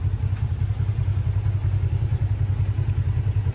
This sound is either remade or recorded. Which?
recorded